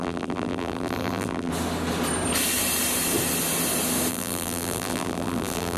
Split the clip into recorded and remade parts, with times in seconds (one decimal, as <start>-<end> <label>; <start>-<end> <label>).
0.0-1.5 remade; 1.5-4.1 recorded; 4.1-5.8 remade